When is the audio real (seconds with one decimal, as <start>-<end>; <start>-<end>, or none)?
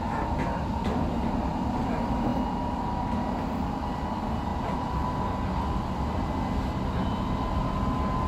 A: 0.0-8.3